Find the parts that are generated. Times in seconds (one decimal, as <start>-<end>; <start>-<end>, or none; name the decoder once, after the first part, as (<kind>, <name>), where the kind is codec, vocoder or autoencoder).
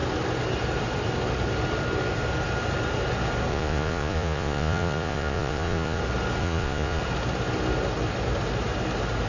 3.5-6.0 (vocoder, Vocos); 6.4-7.0